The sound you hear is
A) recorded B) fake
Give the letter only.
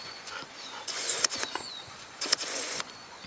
B